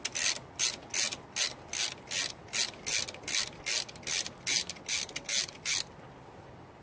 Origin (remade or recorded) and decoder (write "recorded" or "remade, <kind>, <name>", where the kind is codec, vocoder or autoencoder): recorded